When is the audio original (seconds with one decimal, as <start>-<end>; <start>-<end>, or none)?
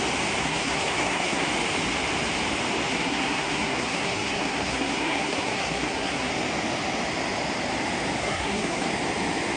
0.0-0.4; 1.5-2.9; 6.3-8.2; 8.9-9.6